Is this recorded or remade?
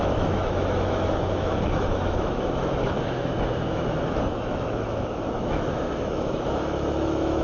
remade